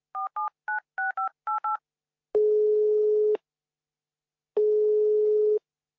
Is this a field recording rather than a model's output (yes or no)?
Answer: yes